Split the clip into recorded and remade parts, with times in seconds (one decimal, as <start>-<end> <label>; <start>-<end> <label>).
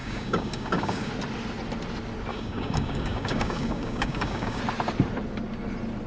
0.0-1.1 remade; 1.1-2.3 recorded; 2.3-4.6 remade; 4.6-6.1 recorded